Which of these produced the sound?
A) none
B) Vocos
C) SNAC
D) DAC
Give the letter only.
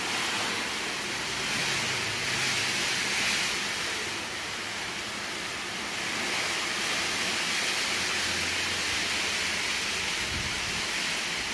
A